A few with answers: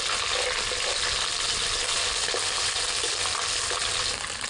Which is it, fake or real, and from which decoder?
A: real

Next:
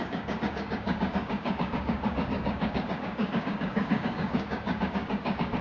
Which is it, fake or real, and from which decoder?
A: fake, codec, DAC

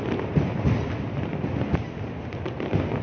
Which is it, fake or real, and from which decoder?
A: real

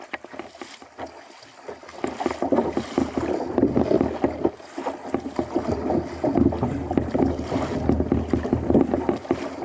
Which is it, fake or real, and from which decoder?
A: real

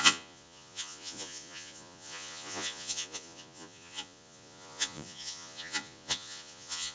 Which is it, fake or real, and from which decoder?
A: fake, vocoder, Vocos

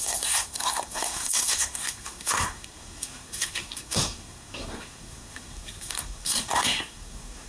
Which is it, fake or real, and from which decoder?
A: fake, codec, SNAC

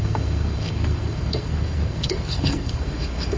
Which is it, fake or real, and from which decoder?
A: fake, codec, SNAC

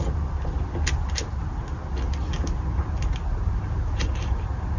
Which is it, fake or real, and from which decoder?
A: real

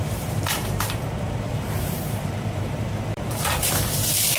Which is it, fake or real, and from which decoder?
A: fake, vocoder, BigVGAN v2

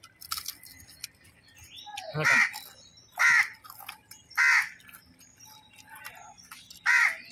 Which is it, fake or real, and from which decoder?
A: real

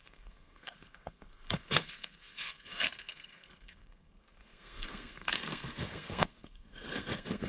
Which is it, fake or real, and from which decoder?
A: fake, codec, SNAC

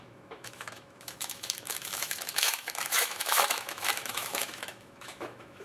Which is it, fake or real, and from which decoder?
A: fake, autoencoder, DAC-VAE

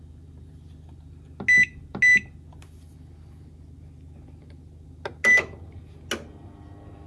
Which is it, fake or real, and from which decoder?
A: real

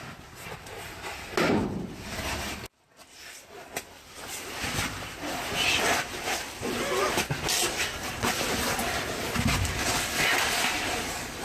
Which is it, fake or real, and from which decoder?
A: real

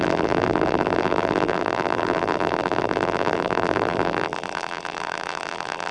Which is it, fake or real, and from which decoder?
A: fake, vocoder, BigVGAN v2